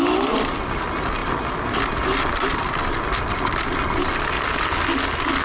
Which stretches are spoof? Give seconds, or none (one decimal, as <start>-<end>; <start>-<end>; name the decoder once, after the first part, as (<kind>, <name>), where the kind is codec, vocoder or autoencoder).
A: none